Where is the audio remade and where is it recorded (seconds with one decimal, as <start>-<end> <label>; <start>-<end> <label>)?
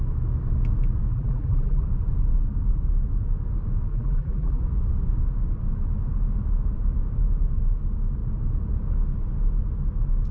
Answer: 0.0-1.1 recorded; 1.1-1.9 remade; 1.9-3.9 recorded; 3.9-4.6 remade; 4.6-10.3 recorded